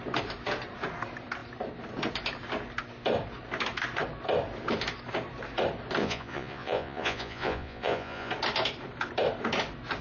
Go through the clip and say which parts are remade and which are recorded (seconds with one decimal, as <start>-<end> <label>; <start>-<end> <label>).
0.0-6.0 recorded; 6.0-8.3 remade; 8.3-10.0 recorded